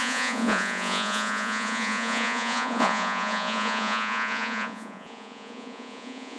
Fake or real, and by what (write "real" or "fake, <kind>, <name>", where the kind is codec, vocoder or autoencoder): fake, vocoder, Vocos